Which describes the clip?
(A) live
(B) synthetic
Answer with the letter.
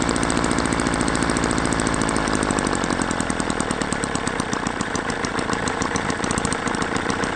B